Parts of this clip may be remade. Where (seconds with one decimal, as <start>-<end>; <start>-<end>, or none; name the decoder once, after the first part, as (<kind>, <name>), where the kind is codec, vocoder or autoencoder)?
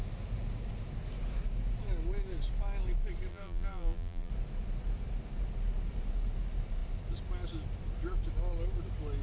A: 3.3-4.3 (vocoder, BigVGAN v2)